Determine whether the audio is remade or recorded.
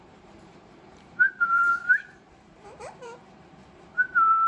remade